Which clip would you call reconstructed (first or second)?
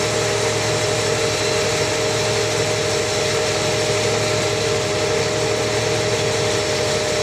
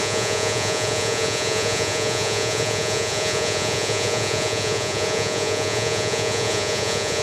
second